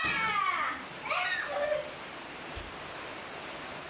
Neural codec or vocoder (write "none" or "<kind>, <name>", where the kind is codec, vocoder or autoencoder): none